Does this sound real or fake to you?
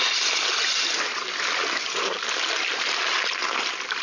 real